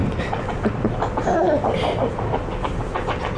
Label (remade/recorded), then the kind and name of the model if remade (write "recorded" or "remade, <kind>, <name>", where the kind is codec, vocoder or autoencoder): recorded